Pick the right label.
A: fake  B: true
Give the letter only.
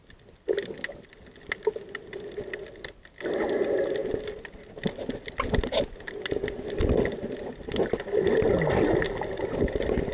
B